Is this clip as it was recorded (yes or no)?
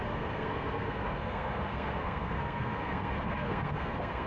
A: no